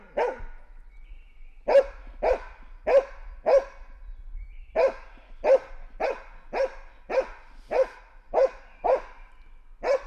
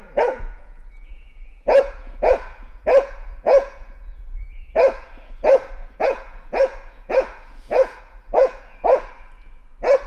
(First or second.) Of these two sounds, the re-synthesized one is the second